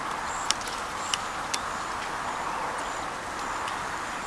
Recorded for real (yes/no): yes